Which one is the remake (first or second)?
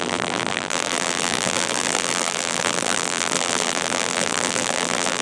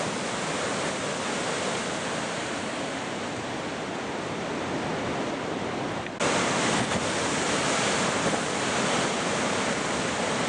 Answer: first